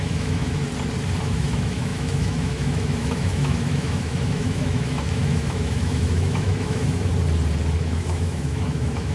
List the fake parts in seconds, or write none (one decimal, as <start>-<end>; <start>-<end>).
0.0-0.6; 1.2-7.1; 7.8-9.1